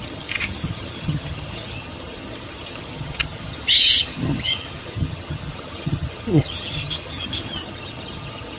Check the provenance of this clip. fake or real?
fake